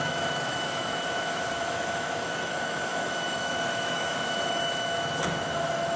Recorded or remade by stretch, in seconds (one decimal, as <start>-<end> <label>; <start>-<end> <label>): 0.0-6.0 remade